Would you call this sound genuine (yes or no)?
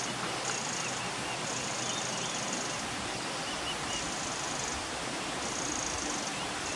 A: yes